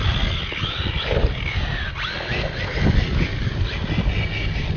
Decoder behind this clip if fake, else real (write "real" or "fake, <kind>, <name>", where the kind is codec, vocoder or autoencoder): real